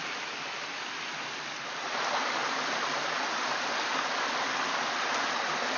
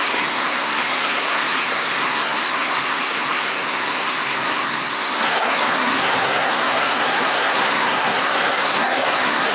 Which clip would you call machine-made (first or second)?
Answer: second